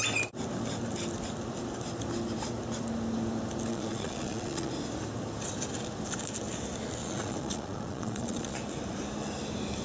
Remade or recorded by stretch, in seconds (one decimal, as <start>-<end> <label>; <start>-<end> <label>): 0.0-3.7 recorded; 3.7-4.7 remade; 4.7-7.0 recorded; 7.0-8.6 remade; 8.6-9.8 recorded